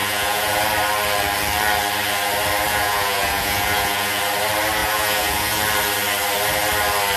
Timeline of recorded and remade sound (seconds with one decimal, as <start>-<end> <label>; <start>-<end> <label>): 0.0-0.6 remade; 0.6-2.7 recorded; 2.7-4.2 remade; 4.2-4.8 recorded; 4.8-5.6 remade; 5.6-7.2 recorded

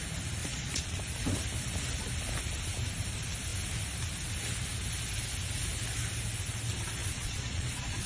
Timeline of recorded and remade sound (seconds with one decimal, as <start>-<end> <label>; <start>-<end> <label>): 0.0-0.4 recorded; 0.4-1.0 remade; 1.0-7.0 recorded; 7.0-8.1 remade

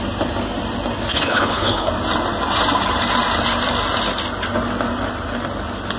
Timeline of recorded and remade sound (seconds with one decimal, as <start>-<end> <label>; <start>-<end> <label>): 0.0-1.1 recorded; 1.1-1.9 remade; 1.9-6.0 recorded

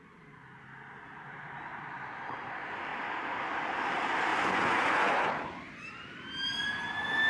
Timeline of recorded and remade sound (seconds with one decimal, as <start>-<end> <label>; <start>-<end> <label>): 0.0-4.3 recorded; 4.3-5.3 remade; 5.3-7.3 recorded

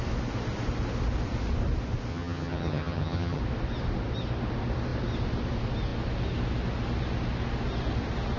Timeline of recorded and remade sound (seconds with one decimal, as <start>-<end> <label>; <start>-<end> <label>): 0.0-2.1 recorded; 2.1-3.4 remade; 3.4-8.4 recorded